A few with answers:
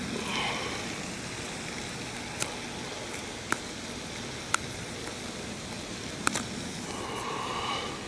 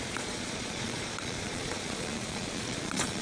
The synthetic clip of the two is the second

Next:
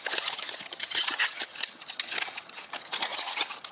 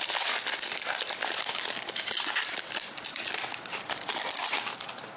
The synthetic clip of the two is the first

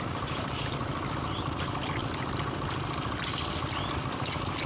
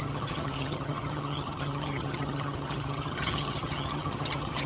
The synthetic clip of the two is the second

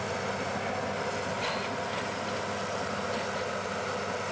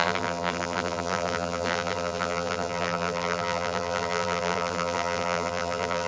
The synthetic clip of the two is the second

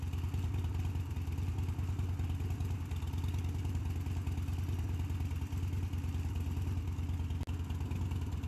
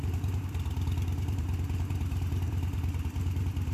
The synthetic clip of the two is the second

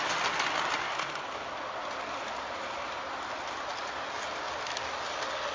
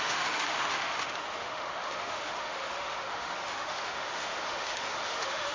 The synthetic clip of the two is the second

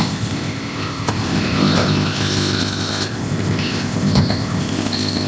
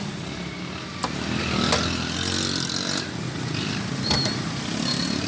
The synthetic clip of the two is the first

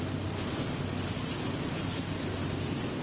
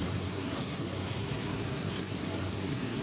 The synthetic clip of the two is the second